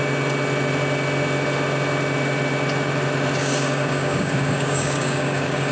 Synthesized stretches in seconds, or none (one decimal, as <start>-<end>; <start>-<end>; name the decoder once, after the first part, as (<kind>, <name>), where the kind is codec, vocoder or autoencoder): 3.4-5.7 (codec, DAC)